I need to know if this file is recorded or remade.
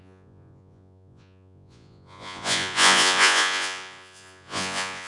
remade